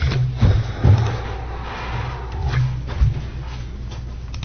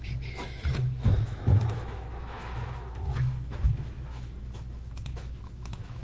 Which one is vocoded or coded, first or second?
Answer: second